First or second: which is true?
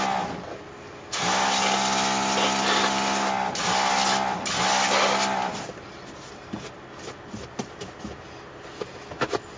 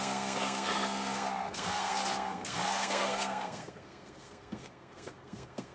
first